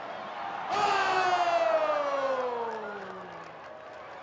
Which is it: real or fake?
real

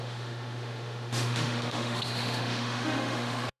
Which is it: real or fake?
fake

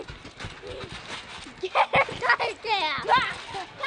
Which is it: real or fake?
real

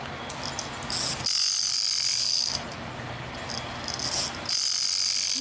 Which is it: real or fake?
real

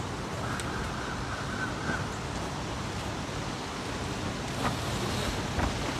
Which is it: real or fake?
real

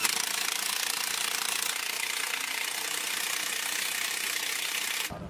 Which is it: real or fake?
real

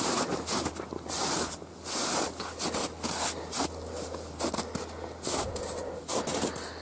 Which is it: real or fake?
real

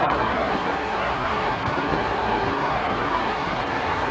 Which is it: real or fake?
fake